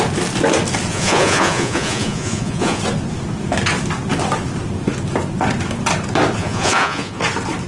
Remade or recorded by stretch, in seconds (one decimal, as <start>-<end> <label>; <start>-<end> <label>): 0.0-0.9 recorded; 0.9-2.8 remade; 2.8-6.4 recorded; 6.4-7.2 remade; 7.2-7.7 recorded